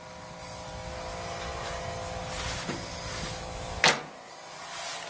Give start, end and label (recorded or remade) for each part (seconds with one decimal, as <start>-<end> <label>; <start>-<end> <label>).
0.0-5.1 recorded